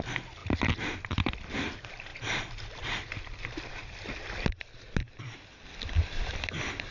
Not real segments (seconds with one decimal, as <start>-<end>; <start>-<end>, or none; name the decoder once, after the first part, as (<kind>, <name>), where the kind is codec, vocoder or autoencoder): none